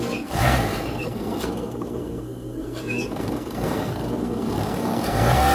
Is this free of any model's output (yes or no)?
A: no